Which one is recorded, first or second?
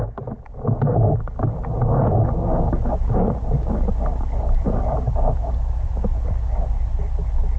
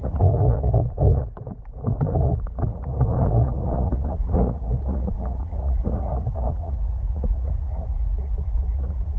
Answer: first